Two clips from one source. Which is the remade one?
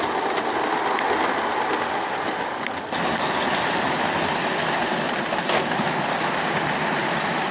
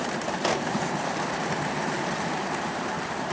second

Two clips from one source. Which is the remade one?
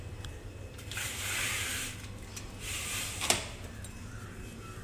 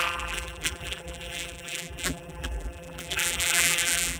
second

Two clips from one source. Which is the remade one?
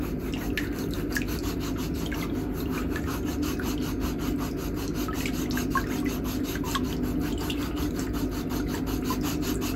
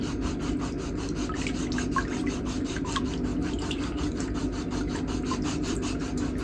second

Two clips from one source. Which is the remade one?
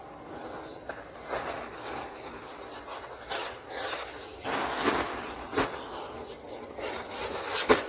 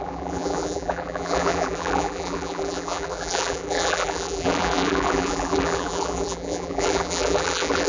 second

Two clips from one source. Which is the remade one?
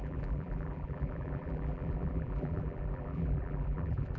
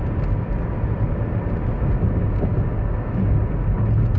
first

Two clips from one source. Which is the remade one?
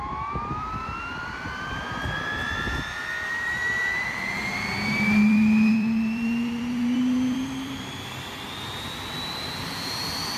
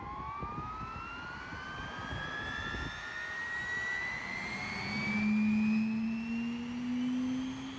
first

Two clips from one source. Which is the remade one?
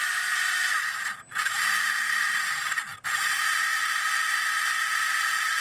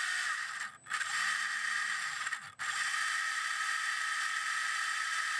first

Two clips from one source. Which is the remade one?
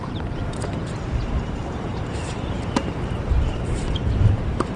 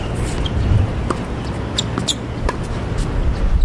first